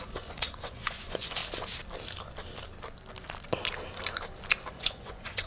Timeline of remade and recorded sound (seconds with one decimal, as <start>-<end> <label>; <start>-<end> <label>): 0.0-1.4 remade; 1.4-4.7 recorded; 4.7-5.5 remade